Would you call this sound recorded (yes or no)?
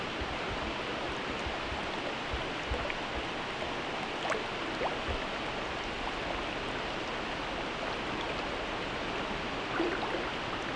yes